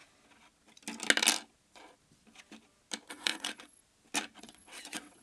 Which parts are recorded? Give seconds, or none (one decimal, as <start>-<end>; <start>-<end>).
0.0-3.1; 3.8-4.4